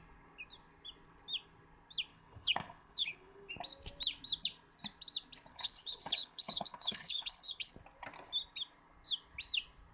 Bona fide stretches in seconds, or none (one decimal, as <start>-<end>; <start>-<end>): 0.0-2.1; 3.5-5.5; 7.7-9.9